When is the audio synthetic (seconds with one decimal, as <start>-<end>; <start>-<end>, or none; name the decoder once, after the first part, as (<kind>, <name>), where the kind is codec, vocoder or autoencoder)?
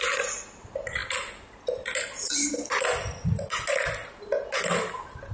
none